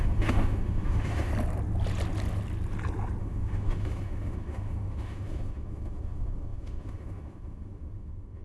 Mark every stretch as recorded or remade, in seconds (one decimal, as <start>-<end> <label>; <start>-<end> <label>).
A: 0.0-1.3 remade; 1.3-3.2 recorded; 3.2-8.4 remade